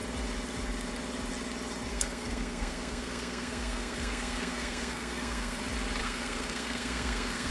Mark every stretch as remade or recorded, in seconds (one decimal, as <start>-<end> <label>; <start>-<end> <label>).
0.0-1.9 recorded; 1.9-5.6 remade; 5.6-6.0 recorded; 6.0-7.5 remade